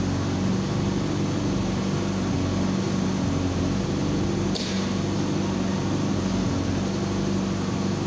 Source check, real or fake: real